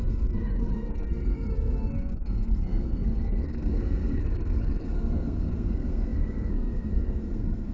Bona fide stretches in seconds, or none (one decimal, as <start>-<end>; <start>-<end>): none